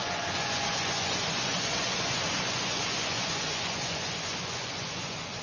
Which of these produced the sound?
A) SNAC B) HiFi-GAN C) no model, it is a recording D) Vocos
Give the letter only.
D